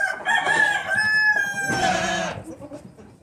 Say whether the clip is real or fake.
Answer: real